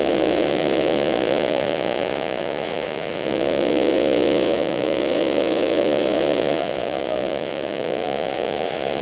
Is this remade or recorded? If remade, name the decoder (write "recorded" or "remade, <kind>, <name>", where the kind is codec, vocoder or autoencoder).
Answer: remade, vocoder, Vocos